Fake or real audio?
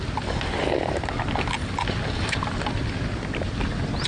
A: real